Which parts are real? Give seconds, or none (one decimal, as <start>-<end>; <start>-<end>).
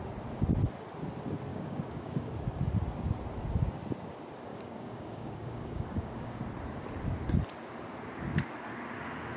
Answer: 0.0-1.5; 2.3-4.5; 6.4-9.4